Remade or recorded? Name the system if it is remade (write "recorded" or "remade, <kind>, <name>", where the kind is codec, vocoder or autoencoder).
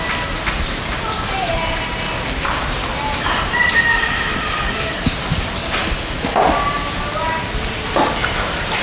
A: recorded